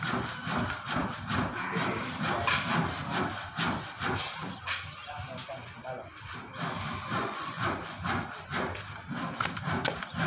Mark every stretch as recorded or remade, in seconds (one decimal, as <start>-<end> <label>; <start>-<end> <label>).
0.0-7.2 recorded; 7.2-7.8 remade; 7.8-10.3 recorded